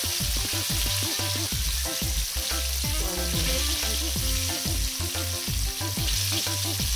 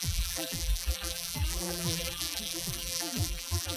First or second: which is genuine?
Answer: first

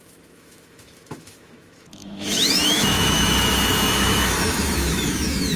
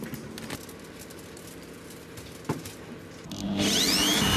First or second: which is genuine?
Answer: second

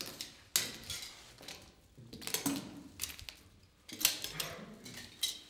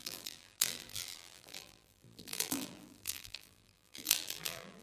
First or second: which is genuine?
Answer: first